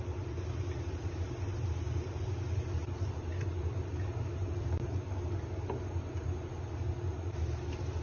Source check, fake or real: real